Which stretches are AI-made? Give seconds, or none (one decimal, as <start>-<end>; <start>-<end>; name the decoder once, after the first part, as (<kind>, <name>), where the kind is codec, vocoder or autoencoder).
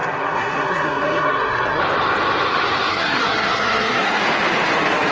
0.0-1.8 (codec, SNAC); 2.9-4.2